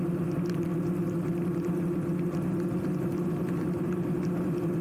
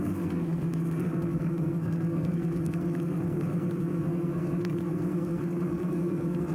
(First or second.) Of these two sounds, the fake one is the second